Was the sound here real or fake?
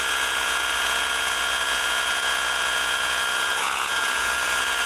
fake